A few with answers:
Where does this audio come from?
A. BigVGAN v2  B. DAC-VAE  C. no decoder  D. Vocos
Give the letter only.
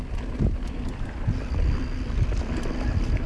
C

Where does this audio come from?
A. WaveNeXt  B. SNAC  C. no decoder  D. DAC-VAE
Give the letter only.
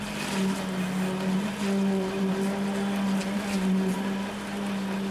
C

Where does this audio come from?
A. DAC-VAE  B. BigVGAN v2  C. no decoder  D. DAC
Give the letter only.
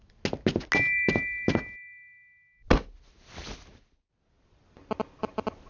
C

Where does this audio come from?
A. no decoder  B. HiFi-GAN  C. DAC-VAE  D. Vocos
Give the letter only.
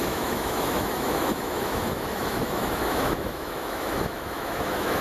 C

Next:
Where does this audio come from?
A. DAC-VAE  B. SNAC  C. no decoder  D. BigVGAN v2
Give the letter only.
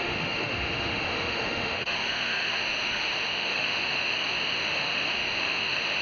A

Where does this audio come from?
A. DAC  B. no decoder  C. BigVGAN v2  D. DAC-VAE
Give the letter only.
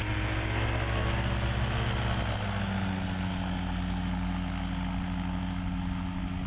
B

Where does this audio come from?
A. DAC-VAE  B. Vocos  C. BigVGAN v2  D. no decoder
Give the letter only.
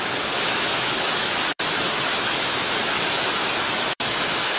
A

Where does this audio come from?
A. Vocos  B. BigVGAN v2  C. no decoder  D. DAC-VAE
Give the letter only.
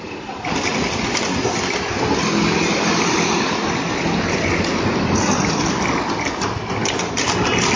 C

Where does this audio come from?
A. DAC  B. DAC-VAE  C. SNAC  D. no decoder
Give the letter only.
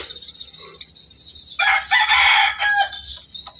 D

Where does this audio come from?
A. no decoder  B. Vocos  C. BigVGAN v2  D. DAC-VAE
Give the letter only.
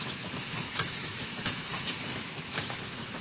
D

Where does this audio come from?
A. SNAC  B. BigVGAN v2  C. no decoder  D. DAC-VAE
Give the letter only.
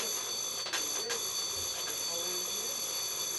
C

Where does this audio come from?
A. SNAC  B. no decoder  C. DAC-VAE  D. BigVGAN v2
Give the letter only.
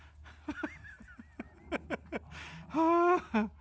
B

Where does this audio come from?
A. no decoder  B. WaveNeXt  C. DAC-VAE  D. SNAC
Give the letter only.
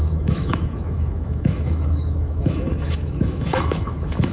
C